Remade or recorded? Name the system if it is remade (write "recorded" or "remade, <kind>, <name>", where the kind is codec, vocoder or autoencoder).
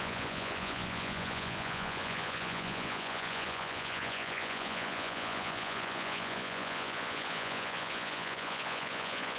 remade, vocoder, Vocos